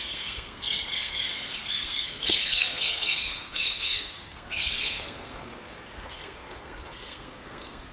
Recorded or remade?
remade